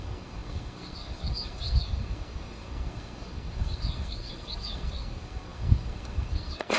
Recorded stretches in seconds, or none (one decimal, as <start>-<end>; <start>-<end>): none